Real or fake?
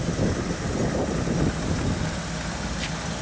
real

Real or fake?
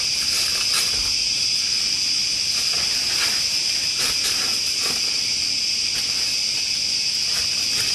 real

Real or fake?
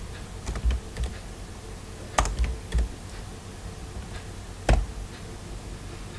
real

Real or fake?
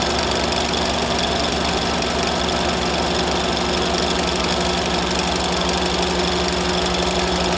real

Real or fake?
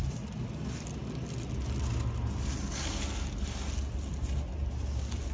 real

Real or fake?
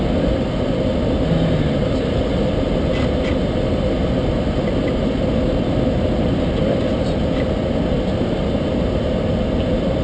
real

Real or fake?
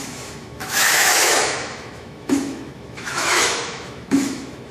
fake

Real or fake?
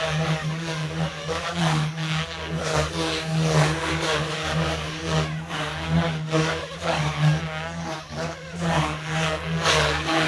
fake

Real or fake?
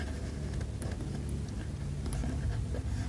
real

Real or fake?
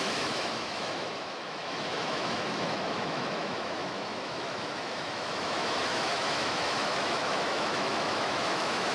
fake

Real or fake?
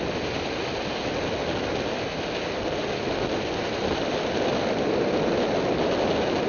real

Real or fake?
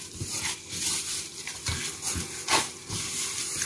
real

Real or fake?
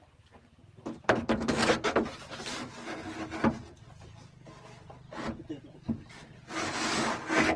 real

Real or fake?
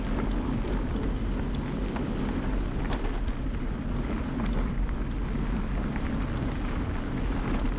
real